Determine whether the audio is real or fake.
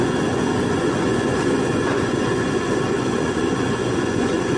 fake